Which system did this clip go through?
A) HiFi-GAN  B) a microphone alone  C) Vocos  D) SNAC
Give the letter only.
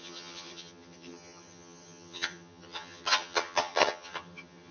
A